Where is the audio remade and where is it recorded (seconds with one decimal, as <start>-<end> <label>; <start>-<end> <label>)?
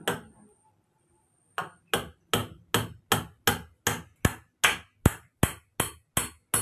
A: 0.0-6.6 recorded